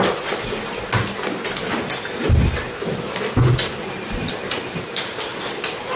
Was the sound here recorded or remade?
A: recorded